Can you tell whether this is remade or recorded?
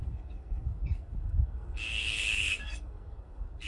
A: remade